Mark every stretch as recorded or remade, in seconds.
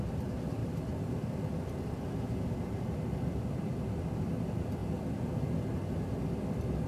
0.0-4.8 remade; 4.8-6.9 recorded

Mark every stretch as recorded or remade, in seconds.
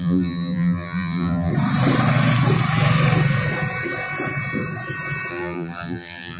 0.0-1.5 remade; 1.5-5.3 recorded; 5.3-6.4 remade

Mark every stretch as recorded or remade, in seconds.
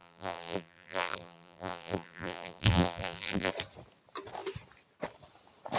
0.0-3.5 remade; 3.5-5.8 recorded